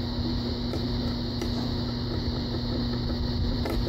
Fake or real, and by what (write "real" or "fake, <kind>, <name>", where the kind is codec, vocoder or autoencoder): real